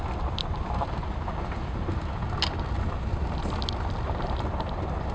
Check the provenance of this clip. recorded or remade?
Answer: recorded